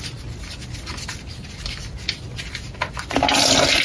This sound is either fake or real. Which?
real